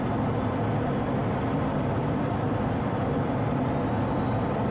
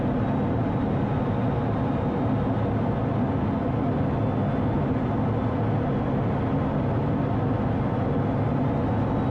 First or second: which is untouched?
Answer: second